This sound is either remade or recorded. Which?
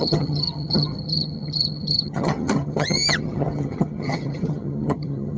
remade